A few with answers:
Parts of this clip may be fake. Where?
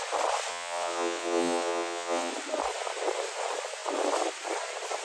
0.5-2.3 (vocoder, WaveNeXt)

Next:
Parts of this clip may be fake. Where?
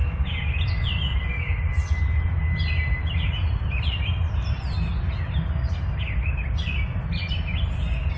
none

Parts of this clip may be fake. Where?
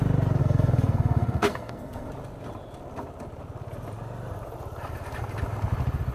0.4-2.1 (codec, SNAC)